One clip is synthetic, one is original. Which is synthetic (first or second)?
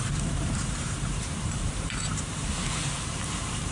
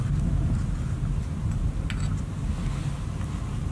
first